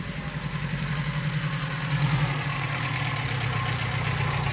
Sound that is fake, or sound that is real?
real